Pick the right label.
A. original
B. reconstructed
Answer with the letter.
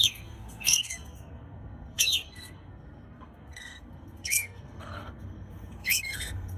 B